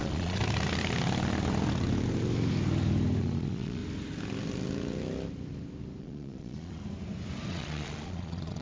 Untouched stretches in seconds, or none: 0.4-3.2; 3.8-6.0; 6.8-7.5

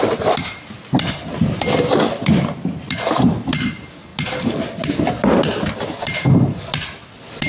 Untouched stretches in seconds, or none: 0.0-7.5

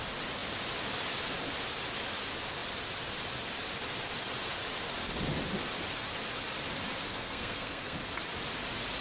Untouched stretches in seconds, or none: 0.0-7.1; 8.0-9.0

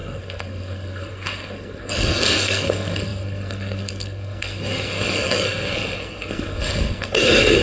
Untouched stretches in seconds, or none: none

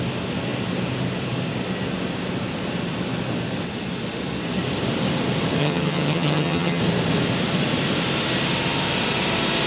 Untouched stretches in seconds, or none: 0.0-5.6; 6.8-9.7

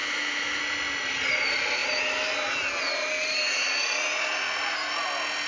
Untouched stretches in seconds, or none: 0.6-5.5

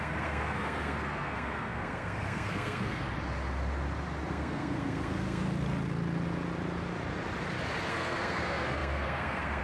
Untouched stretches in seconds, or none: 3.0-4.3; 5.4-7.9